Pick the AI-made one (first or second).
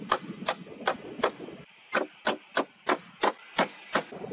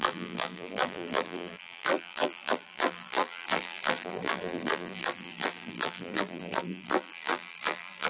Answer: second